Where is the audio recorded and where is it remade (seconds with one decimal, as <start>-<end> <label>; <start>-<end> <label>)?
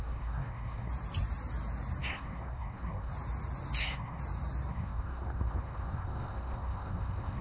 0.0-0.9 remade; 0.9-2.0 recorded; 2.0-3.1 remade; 3.1-3.8 recorded; 3.8-4.2 remade; 4.2-4.7 recorded; 4.7-7.4 remade